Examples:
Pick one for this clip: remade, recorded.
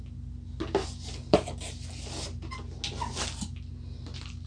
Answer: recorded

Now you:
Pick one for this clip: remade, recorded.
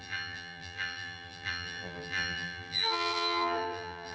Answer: remade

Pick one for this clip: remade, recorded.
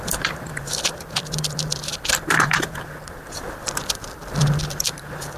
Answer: remade